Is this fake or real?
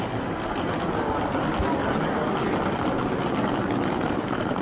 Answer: real